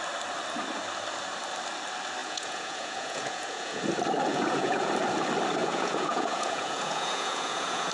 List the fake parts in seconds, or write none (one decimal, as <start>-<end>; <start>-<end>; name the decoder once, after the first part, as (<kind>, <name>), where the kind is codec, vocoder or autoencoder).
2.2-3.8 (vocoder, Vocos); 4.3-4.9; 5.6-7.9